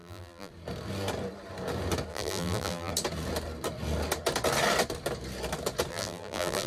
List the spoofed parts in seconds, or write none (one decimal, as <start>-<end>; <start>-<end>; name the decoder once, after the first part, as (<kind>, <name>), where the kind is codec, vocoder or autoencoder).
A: 0.0-0.5 (vocoder, BigVGAN v2); 2.1-2.9; 5.9-6.7